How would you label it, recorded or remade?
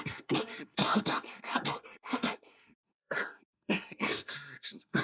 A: remade